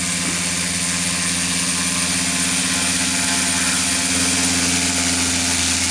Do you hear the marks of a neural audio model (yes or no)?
no